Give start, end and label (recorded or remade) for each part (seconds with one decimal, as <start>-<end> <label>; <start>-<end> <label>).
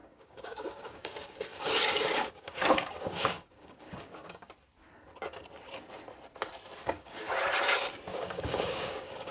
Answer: 0.0-4.5 remade; 4.5-6.8 recorded; 6.8-7.3 remade; 7.3-8.1 recorded; 8.1-9.3 remade